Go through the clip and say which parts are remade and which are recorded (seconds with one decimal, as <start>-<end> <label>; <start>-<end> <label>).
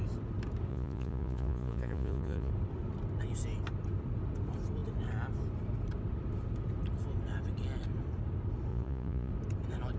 0.0-0.7 recorded; 0.7-2.5 remade; 2.5-8.7 recorded; 8.7-9.3 remade; 9.3-10.0 recorded